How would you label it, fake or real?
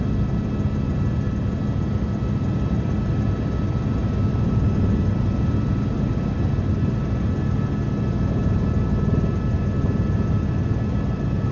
real